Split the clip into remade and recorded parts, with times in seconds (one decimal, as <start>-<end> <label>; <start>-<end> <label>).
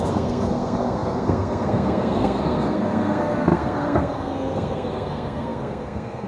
0.0-6.3 remade